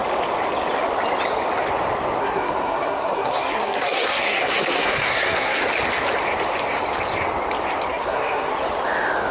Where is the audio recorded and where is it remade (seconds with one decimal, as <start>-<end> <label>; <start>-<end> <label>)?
0.0-2.2 recorded; 2.2-5.6 remade; 5.6-7.9 recorded; 7.9-8.6 remade; 8.6-9.3 recorded